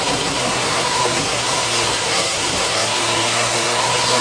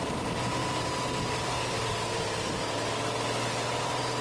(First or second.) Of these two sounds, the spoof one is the first